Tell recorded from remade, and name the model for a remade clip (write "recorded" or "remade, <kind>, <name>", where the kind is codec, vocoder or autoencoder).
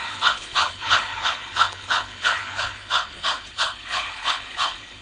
remade, codec, HILCodec